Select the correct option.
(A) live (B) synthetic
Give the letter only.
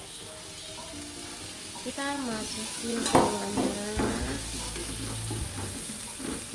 A